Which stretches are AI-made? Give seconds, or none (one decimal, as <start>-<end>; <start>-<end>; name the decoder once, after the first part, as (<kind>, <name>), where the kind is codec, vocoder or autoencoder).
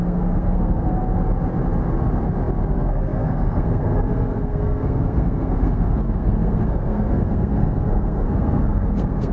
0.0-1.0 (codec, SNAC); 2.7-9.3